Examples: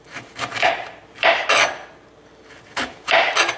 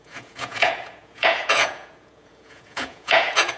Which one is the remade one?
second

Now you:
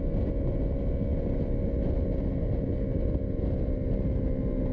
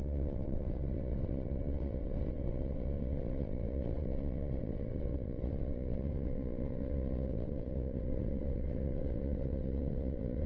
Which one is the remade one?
second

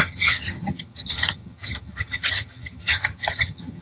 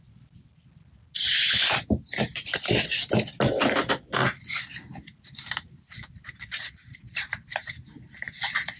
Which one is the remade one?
first